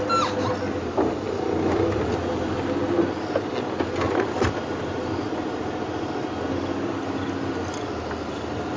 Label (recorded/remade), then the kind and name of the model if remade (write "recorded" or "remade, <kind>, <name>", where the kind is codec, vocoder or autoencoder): recorded